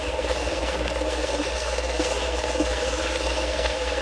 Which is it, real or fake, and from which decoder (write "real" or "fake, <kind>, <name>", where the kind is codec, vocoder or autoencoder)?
fake, codec, SNAC